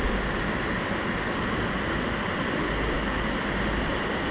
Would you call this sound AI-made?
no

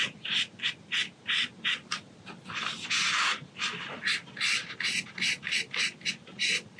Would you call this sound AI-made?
no